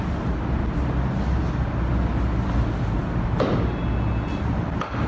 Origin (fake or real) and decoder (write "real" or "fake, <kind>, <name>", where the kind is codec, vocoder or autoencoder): real